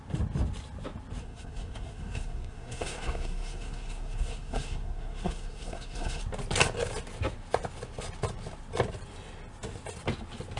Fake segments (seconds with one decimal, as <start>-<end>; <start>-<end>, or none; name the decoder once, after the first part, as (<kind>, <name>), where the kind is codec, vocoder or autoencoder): 1.2-6.2 (codec, SNAC)